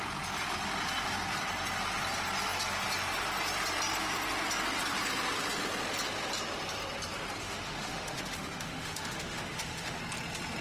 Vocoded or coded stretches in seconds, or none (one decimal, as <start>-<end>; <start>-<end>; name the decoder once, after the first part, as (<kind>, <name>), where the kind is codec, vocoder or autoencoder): 7.4-10.0 (autoencoder, DAC-VAE)